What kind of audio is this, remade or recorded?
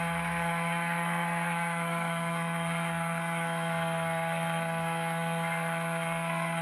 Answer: remade